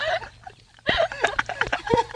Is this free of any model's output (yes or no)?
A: yes